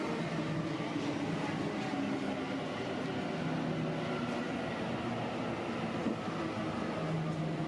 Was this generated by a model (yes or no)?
no